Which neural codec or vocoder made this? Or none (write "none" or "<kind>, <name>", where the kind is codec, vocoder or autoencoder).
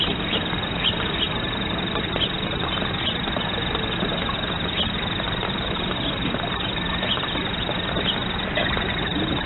none